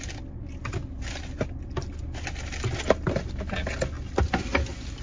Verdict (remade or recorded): recorded